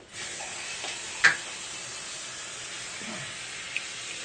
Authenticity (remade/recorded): recorded